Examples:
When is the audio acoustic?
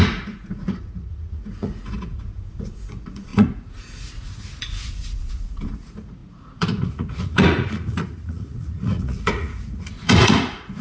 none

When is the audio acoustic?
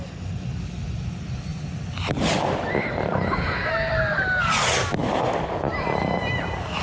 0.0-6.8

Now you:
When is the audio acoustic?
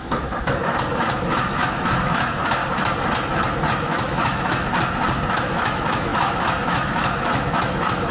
2.6-3.7; 4.7-5.3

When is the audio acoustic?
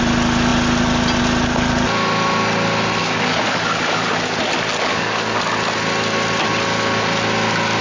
0.0-3.0; 4.4-4.9; 5.4-7.8